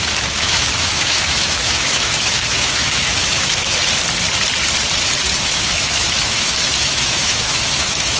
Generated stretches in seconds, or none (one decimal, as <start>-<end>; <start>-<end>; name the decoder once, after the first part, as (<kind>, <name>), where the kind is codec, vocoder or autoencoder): 0.0-3.8 (autoencoder, DAC-VAE); 5.4-8.2